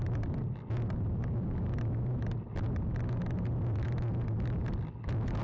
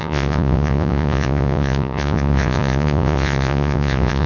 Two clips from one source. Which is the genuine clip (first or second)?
first